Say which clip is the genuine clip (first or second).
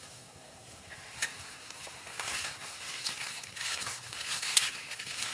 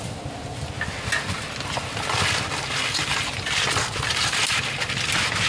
second